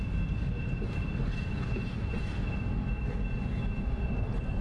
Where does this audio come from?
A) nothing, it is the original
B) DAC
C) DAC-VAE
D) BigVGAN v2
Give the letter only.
A